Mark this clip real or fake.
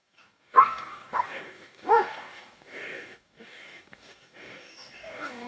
fake